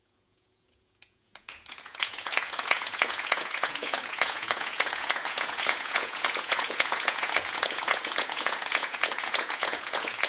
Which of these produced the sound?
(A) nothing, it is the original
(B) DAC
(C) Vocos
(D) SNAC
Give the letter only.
C